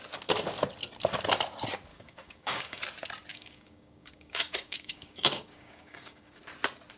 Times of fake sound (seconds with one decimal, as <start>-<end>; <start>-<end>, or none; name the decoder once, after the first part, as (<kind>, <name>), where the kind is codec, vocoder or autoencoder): 1.9-2.8 (codec, DAC); 3.3-6.4